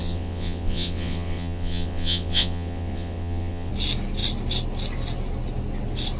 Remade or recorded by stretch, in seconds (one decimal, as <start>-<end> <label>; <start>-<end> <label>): 0.0-3.7 remade; 3.7-6.2 recorded